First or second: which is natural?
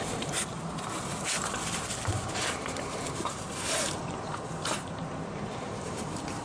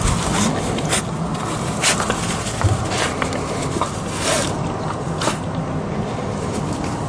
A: second